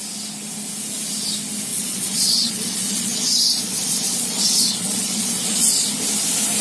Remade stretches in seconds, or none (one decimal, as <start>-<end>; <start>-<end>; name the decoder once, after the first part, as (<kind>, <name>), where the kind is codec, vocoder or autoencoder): 1.7-5.7 (vocoder, Vocos)